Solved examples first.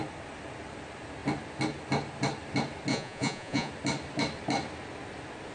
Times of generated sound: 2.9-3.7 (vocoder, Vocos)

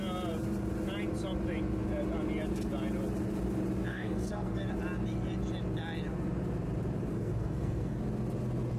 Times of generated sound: 3.9-4.6 (codec, SNAC); 7.1-8.0

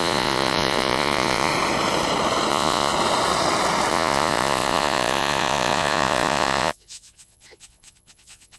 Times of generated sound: 0.0-1.5 (vocoder, Vocos); 2.5-2.9; 3.9-8.6

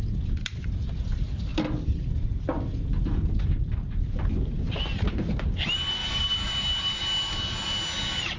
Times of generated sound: none

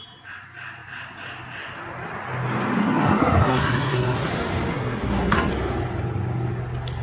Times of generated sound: 2.8-4.3 (codec, SNAC); 4.7-5.5